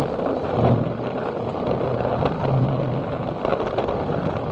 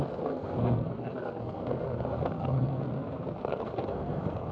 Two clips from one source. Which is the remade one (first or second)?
second